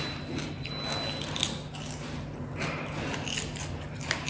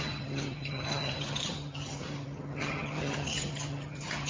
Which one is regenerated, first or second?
second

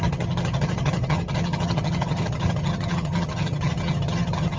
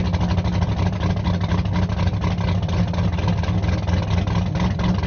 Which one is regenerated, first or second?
first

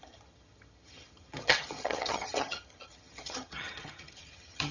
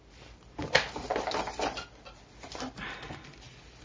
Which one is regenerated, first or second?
first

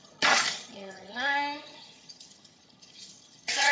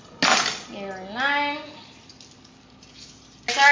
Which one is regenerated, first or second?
first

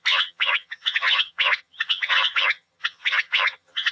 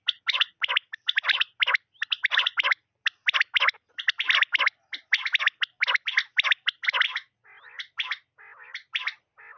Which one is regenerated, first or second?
first